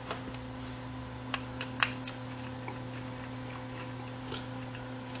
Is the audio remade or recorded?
recorded